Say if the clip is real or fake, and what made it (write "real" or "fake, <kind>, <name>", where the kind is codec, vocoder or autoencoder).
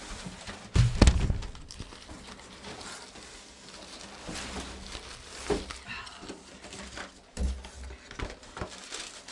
real